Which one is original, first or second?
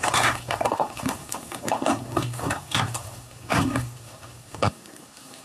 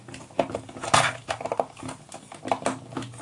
second